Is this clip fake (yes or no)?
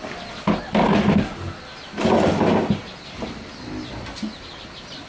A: no